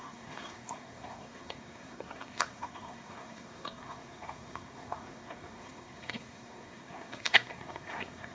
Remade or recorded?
remade